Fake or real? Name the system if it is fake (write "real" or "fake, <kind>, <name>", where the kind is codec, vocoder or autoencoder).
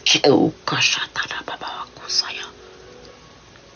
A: real